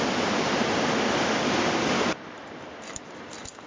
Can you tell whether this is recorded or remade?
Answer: recorded